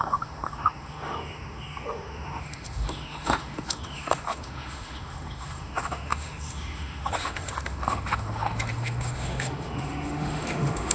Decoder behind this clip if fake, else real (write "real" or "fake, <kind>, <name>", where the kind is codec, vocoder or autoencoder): fake, autoencoder, DAC-VAE